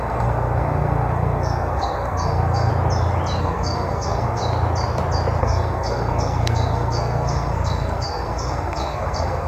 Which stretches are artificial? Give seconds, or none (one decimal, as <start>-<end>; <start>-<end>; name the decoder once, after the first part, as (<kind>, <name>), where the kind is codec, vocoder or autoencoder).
0.0-2.7 (codec, SNAC); 3.4-4.4; 5.4-9.5